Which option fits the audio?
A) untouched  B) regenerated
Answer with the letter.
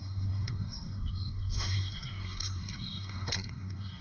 B